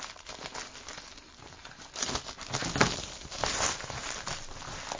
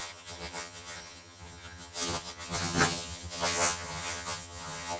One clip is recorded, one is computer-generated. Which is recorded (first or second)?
first